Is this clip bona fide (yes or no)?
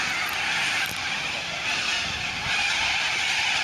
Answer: yes